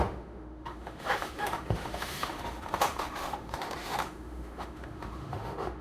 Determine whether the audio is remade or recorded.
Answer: remade